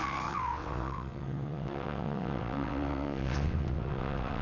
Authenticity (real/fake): fake